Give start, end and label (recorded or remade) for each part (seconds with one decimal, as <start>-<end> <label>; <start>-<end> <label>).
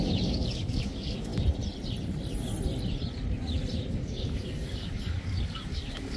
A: 0.0-1.3 remade; 1.3-3.9 recorded; 3.9-6.2 remade